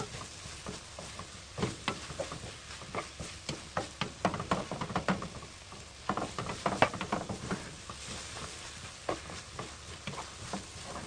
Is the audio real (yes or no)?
yes